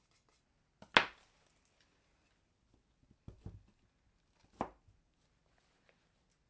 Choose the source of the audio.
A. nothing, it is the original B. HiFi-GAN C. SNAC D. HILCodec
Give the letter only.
A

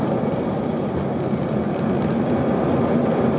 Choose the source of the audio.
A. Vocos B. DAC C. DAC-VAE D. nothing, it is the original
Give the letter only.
D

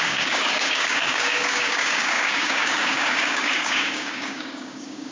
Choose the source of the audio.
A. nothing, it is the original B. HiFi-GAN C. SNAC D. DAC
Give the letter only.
D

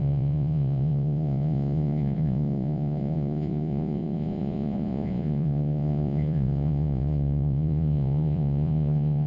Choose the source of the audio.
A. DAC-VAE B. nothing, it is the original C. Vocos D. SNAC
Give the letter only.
C